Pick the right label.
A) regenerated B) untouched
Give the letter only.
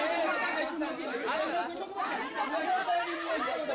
A